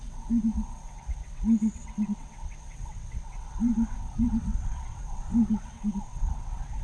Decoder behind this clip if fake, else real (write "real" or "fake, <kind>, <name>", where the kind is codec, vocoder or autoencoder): fake, vocoder, WaveNeXt